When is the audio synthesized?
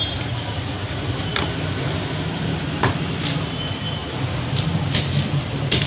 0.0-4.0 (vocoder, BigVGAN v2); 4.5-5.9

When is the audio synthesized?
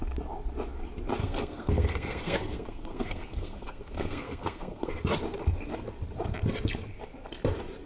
1.2-4.9 (codec, SNAC)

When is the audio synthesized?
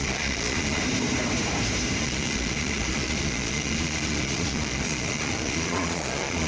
0.0-0.8 (vocoder, Vocos); 2.0-6.5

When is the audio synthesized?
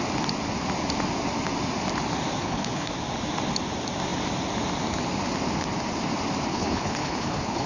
2.4-2.9 (codec, HILCodec); 6.5-7.7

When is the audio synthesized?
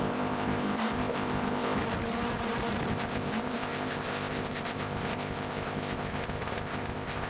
0.0-1.8 (codec, ZipCodec); 2.9-7.3